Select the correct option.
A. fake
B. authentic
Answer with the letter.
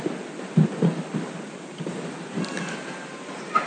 B